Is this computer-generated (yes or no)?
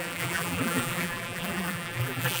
yes